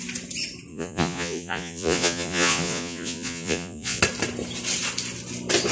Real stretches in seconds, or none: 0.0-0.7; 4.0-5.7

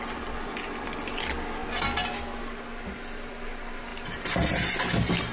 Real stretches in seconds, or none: 0.0-5.3

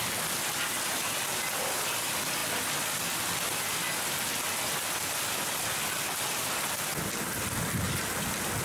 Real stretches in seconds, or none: 0.0-8.6

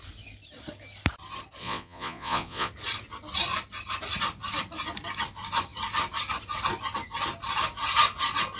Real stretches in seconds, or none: 0.0-1.6; 2.7-8.6

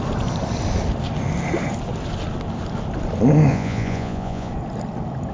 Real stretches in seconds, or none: 0.0-3.5; 4.5-5.3

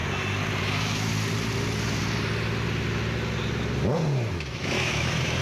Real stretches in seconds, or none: 0.0-0.6; 1.1-4.3

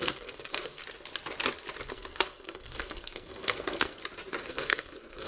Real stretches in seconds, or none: 0.8-1.9; 4.0-4.5